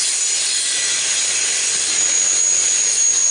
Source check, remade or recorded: recorded